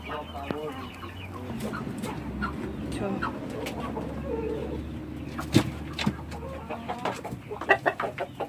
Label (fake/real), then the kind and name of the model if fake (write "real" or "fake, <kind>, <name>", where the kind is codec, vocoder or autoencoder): real